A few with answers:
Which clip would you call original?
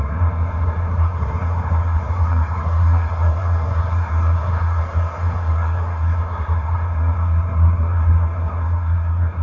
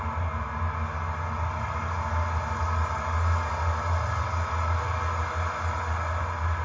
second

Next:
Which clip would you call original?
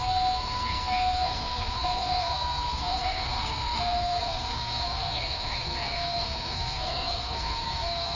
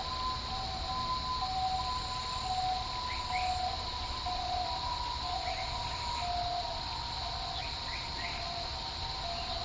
second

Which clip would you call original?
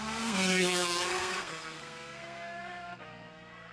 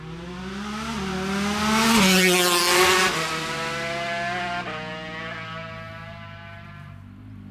second